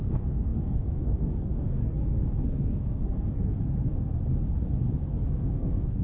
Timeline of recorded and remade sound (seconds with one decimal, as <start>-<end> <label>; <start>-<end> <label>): 0.0-3.5 remade; 3.5-5.1 recorded; 5.1-6.0 remade